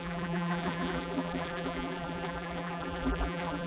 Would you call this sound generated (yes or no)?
yes